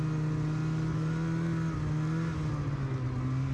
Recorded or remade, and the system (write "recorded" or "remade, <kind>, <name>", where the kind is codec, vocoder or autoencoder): recorded